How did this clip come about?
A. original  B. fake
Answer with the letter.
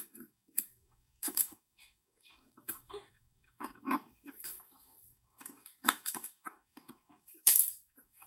B